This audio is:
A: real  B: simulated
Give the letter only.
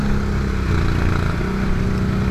A